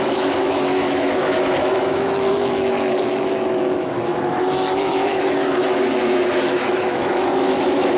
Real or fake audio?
fake